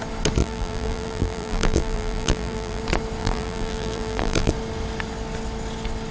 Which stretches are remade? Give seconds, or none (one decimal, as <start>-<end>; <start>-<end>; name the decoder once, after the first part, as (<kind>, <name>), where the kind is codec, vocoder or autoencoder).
0.4-2.8 (vocoder, BigVGAN v2); 3.2-4.5